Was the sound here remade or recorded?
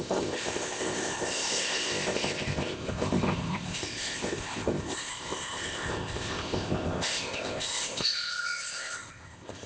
remade